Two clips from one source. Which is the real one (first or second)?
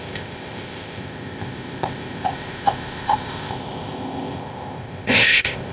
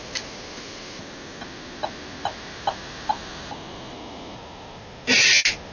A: second